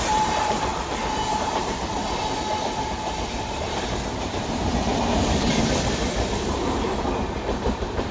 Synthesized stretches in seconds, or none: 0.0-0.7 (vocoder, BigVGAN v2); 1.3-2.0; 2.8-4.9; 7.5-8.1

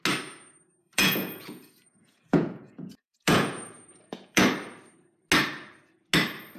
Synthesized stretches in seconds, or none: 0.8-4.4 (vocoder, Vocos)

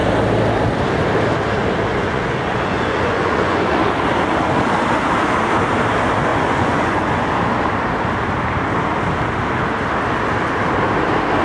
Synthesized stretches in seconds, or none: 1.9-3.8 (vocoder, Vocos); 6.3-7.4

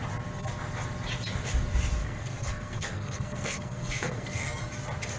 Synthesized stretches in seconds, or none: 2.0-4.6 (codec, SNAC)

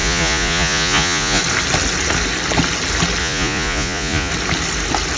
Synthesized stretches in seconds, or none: 0.0-1.4 (vocoder, Vocos); 3.2-4.3

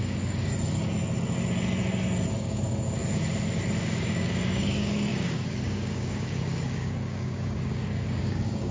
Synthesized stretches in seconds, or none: 0.0-0.5 (codec, DAC); 2.4-3.0; 3.8-8.7

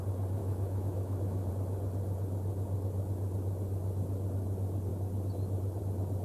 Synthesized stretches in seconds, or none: 0.4-1.5 (autoencoder, DAC-VAE)

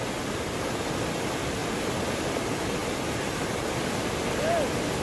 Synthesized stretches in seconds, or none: none